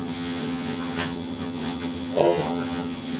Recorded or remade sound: remade